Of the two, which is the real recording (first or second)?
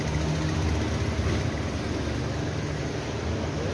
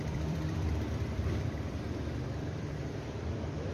first